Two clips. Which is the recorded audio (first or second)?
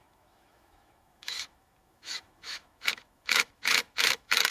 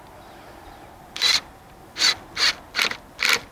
second